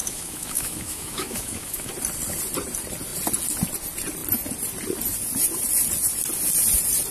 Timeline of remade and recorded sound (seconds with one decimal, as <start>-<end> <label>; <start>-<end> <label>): 0.0-1.9 remade; 1.9-7.1 recorded